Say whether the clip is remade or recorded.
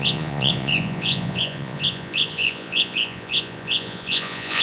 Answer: remade